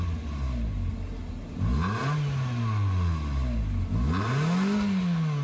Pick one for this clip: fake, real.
real